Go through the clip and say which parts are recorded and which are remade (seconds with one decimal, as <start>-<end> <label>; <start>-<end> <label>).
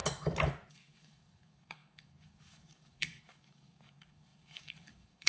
0.0-0.7 recorded; 0.7-5.3 remade